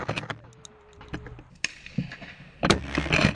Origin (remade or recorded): recorded